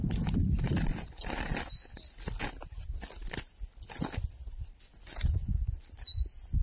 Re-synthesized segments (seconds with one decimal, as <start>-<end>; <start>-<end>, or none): none